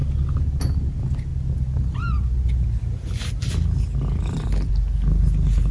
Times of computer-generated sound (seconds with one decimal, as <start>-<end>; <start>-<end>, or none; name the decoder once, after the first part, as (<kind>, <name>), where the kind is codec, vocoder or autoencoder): none